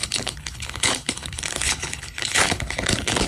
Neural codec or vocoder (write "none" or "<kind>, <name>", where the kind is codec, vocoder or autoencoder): codec, HILCodec